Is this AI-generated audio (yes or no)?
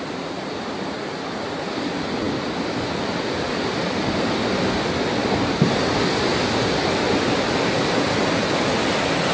no